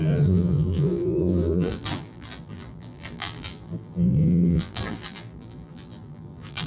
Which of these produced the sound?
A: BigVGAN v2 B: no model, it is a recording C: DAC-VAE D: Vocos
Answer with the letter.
A